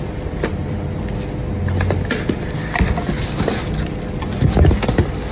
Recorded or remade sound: recorded